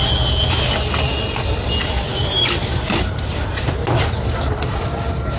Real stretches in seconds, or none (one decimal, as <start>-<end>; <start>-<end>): 0.0-5.4